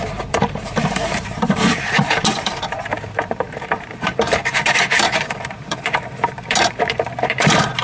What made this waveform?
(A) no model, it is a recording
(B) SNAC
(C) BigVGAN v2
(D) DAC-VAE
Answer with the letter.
C